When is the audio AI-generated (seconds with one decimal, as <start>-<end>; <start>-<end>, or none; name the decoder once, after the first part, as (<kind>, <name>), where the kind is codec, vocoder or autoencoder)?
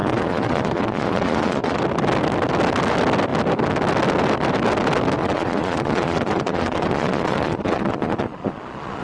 0.0-1.8 (vocoder, Vocos); 5.2-9.0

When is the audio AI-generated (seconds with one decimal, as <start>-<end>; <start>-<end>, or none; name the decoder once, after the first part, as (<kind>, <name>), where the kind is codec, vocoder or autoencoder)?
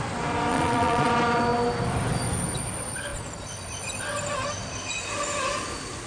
0.5-1.1 (vocoder, Vocos)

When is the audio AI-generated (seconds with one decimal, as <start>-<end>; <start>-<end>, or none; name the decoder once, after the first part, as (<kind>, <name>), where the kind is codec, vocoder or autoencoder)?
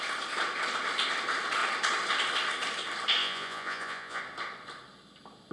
3.2-4.2 (vocoder, Vocos)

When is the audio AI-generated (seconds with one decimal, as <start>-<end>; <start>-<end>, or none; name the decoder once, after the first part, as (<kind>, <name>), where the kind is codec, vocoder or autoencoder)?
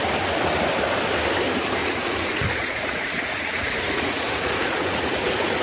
1.8-5.6 (vocoder, Vocos)